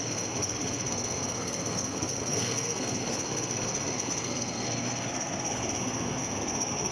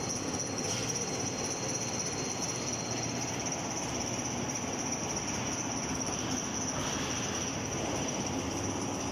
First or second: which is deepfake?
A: first